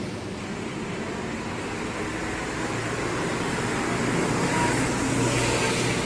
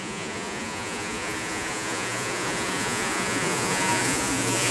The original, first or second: first